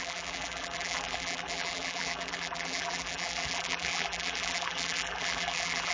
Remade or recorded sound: remade